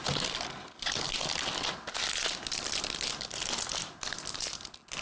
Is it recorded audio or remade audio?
recorded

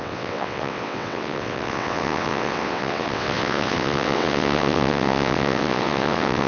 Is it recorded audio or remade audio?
remade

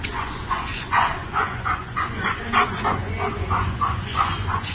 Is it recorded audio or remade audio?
remade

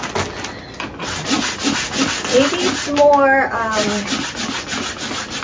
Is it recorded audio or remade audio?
recorded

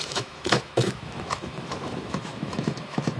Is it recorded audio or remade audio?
remade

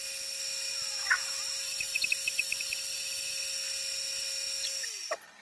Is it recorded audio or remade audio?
recorded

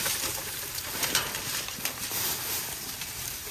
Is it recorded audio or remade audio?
remade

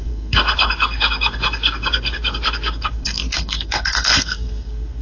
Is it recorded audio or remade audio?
remade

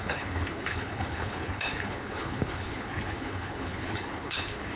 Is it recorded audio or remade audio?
remade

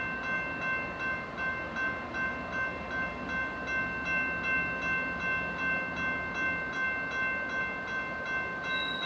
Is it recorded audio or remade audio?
recorded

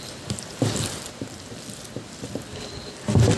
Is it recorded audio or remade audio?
remade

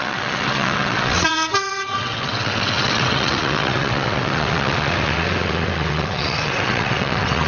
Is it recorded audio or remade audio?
remade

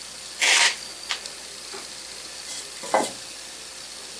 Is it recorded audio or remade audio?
recorded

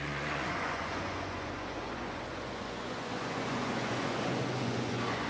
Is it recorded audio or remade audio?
remade